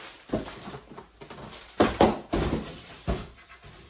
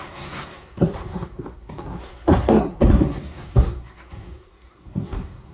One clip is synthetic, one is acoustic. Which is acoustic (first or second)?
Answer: first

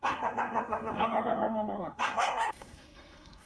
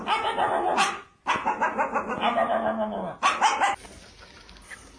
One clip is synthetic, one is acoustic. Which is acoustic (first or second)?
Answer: second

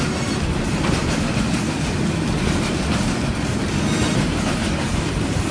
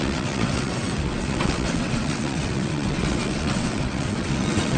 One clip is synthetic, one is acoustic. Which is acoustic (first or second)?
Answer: first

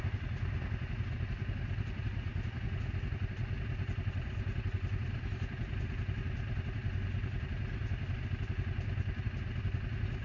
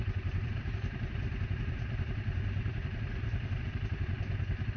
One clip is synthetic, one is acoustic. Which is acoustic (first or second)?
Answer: first